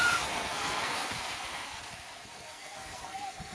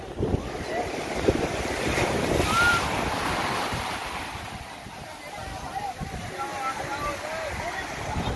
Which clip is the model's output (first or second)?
first